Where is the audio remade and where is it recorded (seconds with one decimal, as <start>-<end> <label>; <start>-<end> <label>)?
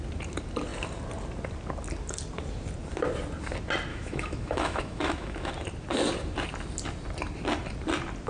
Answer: 0.0-3.9 recorded; 3.9-5.5 remade; 5.5-8.3 recorded